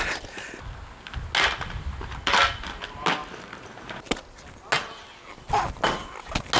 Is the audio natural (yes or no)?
yes